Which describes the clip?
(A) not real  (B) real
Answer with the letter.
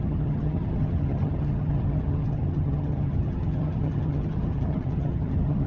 A